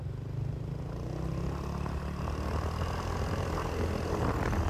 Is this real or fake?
real